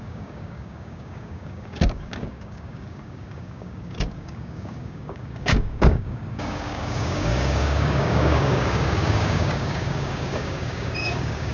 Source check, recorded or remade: remade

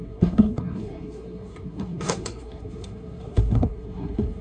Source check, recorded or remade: remade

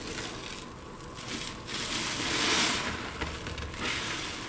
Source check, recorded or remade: recorded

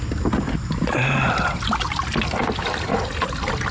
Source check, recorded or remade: recorded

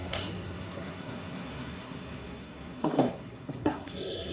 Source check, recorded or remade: remade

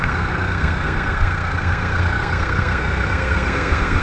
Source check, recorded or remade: remade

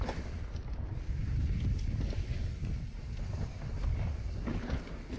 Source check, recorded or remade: recorded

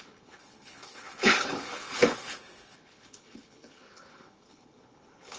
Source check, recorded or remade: remade